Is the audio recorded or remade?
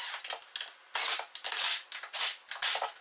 recorded